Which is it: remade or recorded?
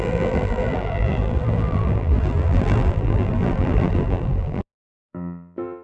remade